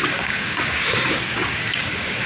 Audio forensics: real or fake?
fake